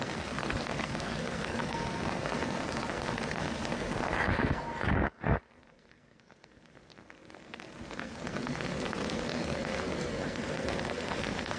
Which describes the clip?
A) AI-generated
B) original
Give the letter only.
A